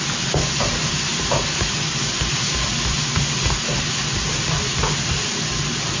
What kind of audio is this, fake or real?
fake